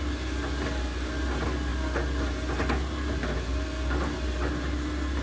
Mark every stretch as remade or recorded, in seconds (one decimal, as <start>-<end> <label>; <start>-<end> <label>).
0.0-5.2 recorded